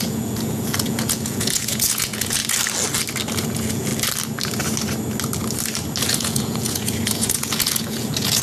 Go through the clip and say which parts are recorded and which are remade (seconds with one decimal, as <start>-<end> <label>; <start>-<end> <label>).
0.0-2.4 remade; 2.4-3.3 recorded; 3.3-3.9 remade; 3.9-6.0 recorded; 6.0-8.4 remade